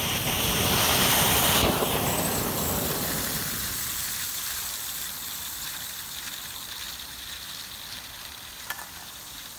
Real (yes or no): no